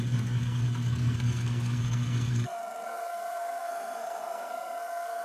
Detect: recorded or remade remade